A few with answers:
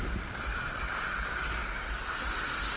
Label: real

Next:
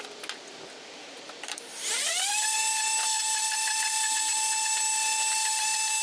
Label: real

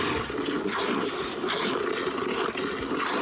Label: real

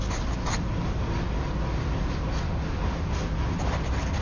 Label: real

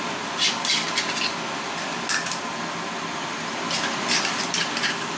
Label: real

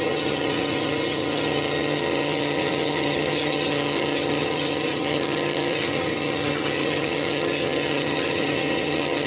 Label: fake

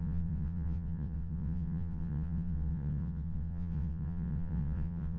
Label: fake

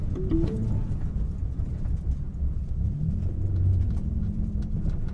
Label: fake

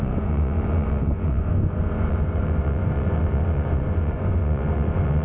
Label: fake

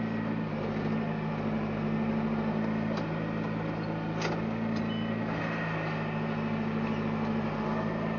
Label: real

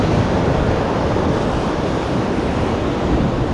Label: real